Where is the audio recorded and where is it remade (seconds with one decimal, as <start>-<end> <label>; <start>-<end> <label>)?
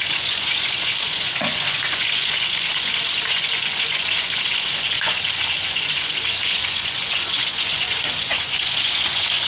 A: 0.0-9.5 remade